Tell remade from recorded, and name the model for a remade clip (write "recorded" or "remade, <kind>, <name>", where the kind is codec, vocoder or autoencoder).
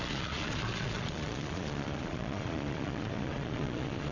remade, vocoder, Vocos